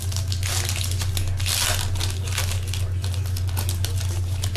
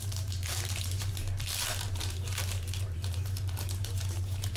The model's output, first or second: second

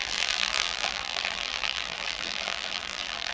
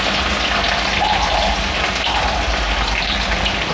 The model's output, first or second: first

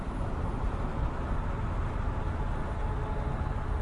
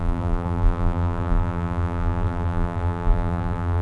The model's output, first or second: second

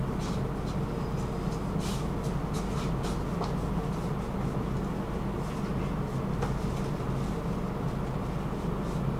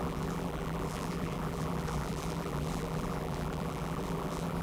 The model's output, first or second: second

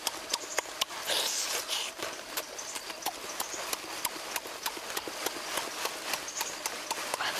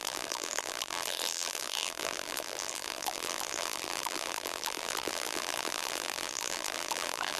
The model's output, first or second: second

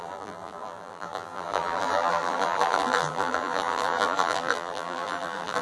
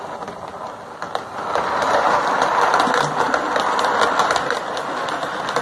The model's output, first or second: first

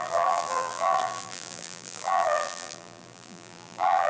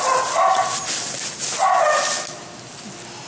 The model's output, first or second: first